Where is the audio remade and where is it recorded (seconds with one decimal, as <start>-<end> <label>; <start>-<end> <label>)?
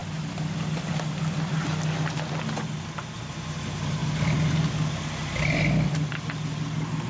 0.0-7.1 recorded